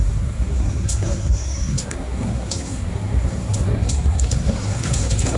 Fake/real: fake